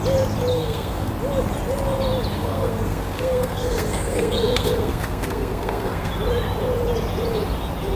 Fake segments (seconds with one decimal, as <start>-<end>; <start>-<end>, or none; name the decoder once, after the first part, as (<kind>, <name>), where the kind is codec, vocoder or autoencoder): 0.5-1.1 (codec, SNAC); 2.4-6.1